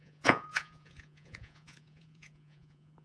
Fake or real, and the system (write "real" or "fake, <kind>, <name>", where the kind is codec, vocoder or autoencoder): fake, vocoder, Vocos